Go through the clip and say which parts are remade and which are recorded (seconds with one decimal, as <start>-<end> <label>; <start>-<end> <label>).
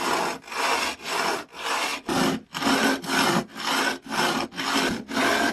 0.0-5.5 recorded